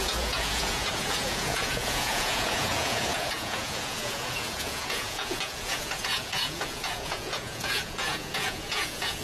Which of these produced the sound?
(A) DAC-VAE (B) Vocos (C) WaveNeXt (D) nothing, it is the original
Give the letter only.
B